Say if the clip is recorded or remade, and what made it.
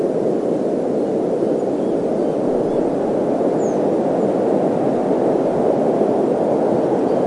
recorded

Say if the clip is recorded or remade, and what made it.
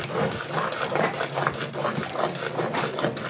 recorded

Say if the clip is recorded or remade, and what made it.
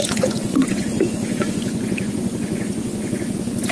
remade, vocoder, Vocos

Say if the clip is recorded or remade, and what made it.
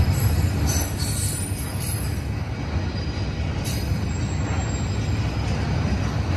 recorded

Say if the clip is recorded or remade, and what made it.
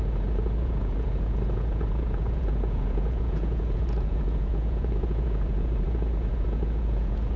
remade, vocoder, Vocos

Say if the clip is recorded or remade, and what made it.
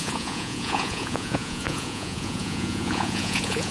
remade, vocoder, Vocos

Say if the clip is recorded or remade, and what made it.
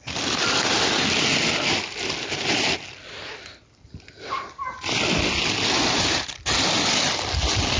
recorded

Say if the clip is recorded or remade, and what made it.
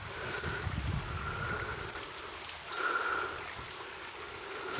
recorded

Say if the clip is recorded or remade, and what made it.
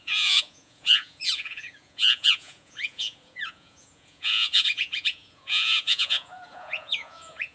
remade, vocoder, Vocos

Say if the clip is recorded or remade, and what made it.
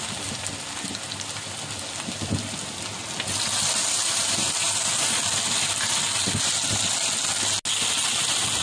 recorded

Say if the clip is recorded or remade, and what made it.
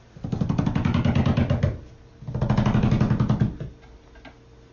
recorded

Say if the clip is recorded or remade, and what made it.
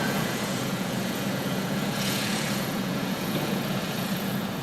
remade, vocoder, Vocos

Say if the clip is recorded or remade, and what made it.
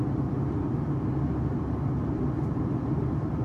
recorded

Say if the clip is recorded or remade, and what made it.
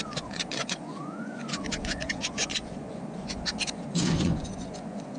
remade, vocoder, Vocos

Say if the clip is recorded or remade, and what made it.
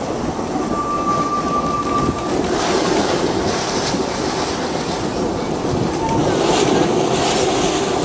recorded